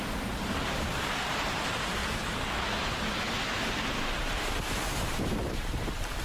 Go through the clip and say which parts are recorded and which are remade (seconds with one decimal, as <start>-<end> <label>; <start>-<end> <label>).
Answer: 0.0-2.0 remade; 2.0-2.8 recorded; 2.8-6.2 remade